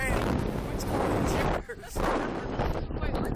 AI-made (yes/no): no